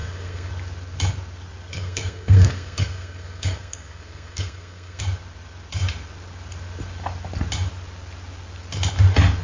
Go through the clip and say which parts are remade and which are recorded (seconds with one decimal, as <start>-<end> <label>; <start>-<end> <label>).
0.0-0.5 remade; 0.5-1.7 recorded; 1.7-5.0 remade; 5.0-9.4 recorded